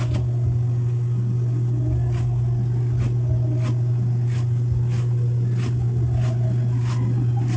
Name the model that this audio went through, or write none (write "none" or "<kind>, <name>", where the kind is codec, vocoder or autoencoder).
none